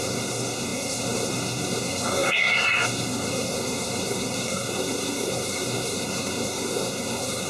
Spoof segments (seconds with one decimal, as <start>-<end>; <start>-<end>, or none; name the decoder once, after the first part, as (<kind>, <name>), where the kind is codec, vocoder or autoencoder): 0.0-7.5 (codec, SNAC)